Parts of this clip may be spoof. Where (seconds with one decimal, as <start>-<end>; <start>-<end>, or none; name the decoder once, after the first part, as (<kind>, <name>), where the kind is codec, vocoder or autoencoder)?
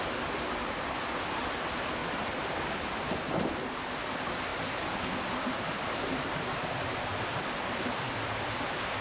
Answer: 2.0-3.0 (vocoder, BigVGAN v2); 4.5-8.3